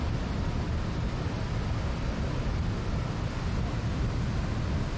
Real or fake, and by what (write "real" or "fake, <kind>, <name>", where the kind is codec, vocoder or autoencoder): real